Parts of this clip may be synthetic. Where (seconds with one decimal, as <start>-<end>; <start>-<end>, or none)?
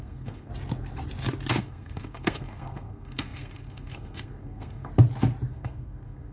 0.0-0.5; 1.5-4.9; 5.5-6.3